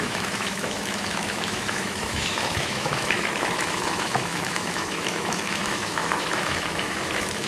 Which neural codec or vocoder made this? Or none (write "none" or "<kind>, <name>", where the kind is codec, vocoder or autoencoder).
autoencoder, DAC-VAE